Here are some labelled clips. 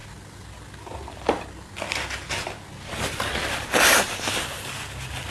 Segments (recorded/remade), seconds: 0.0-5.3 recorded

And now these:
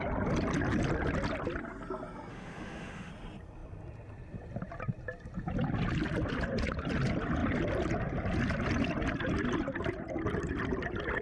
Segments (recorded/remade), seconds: 0.0-2.3 recorded; 2.3-3.1 remade; 3.1-11.2 recorded

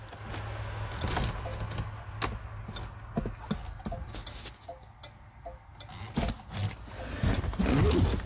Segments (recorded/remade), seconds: 0.0-8.3 recorded

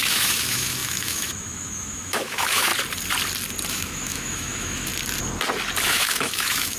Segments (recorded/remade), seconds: 0.0-2.7 remade; 2.7-3.7 recorded; 3.7-4.9 remade; 4.9-5.8 recorded; 5.8-6.8 remade

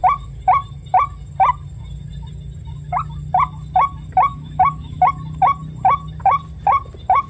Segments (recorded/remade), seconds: 0.0-4.3 recorded; 4.3-5.1 remade; 5.1-7.3 recorded

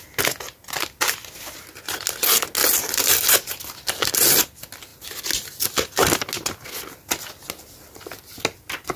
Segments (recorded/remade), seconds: 0.0-9.0 recorded

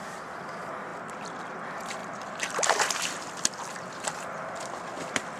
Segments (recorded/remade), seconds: 0.0-5.4 recorded